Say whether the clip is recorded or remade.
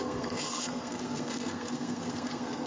remade